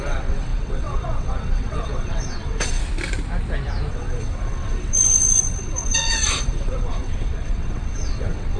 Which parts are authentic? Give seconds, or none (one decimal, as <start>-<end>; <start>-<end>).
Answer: 2.8-3.9